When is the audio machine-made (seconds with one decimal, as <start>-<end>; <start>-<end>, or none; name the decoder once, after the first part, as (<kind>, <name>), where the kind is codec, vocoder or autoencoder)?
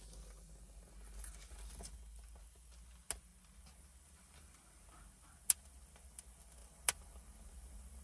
none